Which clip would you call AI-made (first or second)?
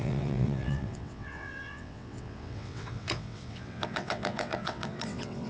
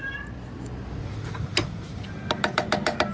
first